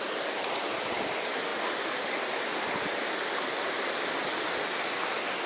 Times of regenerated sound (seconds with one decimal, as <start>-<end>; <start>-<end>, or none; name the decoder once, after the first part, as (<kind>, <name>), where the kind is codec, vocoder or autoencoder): none